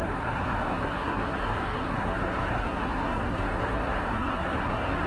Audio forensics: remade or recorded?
remade